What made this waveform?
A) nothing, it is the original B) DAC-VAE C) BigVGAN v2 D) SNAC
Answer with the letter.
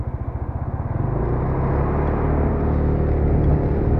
A